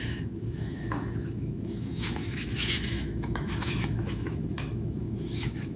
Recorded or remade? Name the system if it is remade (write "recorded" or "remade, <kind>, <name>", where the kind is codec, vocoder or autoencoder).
remade, autoencoder, DAC-VAE